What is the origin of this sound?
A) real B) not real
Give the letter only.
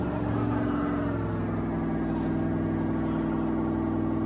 A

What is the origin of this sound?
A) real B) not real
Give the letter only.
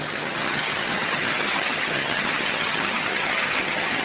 B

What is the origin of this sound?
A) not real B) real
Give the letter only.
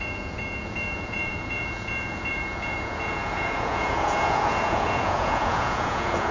A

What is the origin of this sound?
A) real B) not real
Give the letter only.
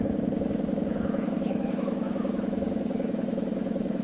B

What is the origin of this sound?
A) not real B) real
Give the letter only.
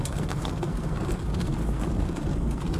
A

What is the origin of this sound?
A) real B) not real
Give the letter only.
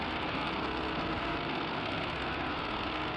B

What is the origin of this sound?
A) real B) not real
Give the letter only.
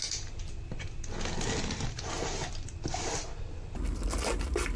A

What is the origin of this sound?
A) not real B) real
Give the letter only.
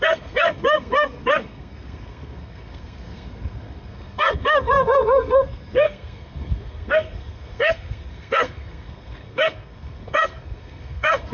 A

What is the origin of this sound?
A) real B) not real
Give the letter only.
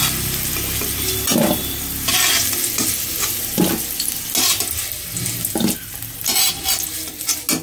A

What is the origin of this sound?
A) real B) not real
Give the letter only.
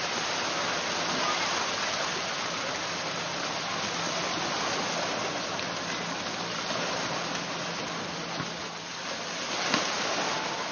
A